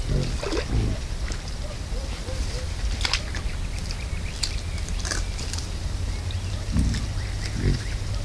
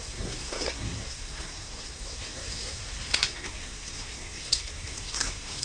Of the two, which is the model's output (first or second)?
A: second